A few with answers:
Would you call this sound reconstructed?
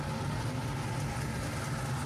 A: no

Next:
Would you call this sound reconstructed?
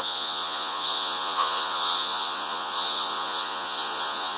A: yes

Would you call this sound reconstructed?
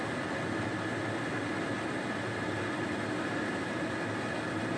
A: no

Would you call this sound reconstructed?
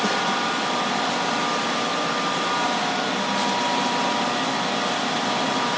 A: no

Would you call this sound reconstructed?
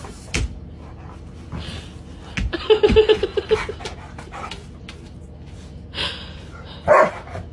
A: no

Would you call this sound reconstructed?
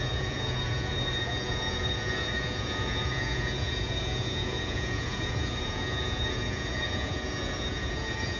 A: yes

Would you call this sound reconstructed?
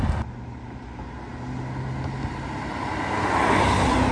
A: no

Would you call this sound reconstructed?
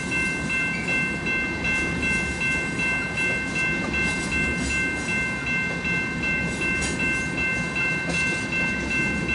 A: no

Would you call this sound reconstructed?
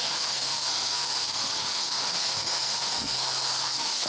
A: yes